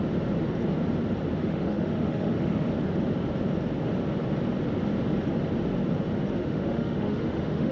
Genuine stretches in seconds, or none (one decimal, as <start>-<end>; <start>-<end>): 0.0-1.4; 2.7-6.4